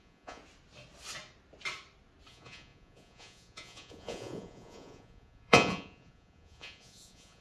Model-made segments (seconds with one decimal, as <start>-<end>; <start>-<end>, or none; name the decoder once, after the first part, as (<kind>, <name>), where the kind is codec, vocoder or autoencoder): 0.0-0.4 (vocoder, Vocos); 2.3-7.4